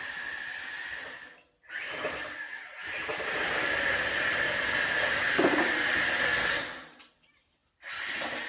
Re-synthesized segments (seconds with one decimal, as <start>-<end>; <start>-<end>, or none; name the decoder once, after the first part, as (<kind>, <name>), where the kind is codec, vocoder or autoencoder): none